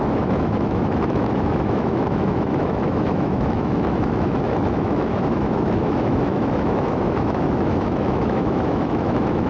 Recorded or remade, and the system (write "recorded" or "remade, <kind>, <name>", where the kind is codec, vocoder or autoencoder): remade, autoencoder, DAC-VAE